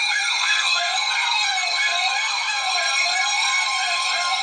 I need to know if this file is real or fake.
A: fake